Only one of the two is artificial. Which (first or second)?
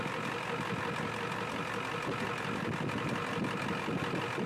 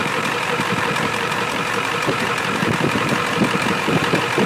second